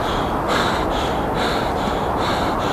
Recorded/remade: recorded